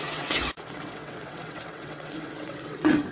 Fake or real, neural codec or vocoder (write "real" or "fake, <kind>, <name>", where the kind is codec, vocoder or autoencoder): fake, vocoder, WaveNeXt